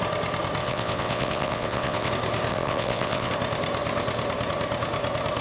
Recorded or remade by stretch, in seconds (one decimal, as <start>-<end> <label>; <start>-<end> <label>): 0.0-0.6 recorded; 0.6-2.1 remade; 2.1-2.5 recorded; 2.5-3.3 remade; 3.3-5.4 recorded